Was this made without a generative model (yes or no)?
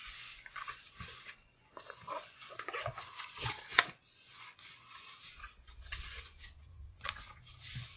no